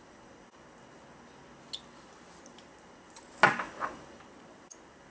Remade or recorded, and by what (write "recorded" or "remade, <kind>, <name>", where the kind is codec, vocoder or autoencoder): recorded